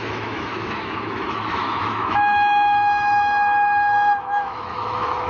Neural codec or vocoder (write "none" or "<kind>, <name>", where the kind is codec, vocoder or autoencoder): autoencoder, DAC-VAE